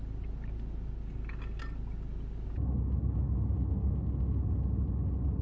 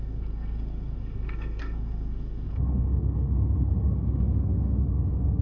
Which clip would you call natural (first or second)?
first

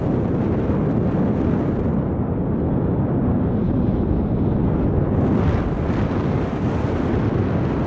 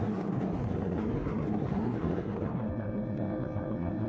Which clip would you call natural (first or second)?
first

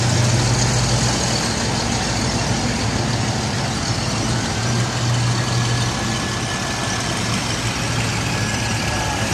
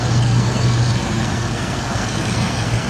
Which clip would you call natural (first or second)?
first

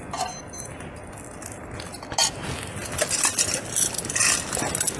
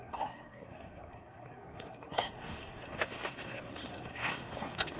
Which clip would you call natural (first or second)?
first